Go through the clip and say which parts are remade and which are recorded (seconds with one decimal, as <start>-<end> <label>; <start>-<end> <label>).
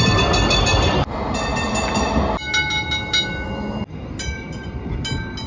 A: 0.0-5.5 recorded